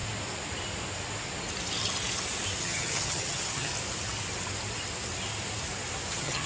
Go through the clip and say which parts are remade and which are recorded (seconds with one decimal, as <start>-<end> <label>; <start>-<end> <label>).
0.0-2.6 recorded; 2.6-3.7 remade; 3.7-6.1 recorded; 6.1-6.5 remade

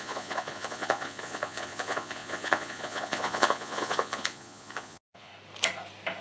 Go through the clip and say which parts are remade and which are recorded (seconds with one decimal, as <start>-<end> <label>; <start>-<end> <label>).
0.0-5.3 remade; 5.3-6.2 recorded

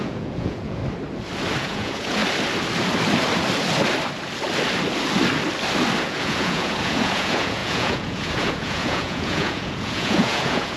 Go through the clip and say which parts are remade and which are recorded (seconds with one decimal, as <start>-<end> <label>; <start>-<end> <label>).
0.0-0.8 remade; 0.8-1.6 recorded; 1.6-2.2 remade; 2.2-6.0 recorded; 6.0-10.8 remade